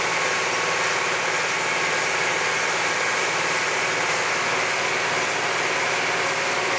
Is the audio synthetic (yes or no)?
no